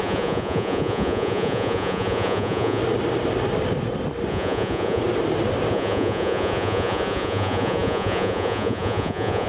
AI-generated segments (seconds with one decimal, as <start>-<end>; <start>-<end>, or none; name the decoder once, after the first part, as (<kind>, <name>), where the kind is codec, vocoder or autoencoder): 0.0-2.8 (vocoder, Vocos); 4.3-5.0; 5.7-9.5